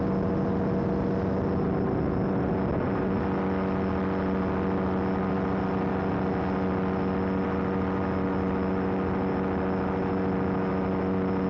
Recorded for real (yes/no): yes